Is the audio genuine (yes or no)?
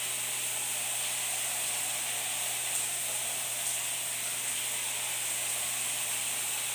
yes